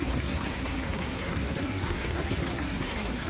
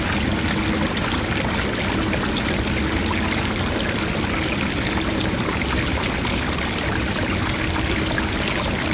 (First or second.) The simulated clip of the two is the first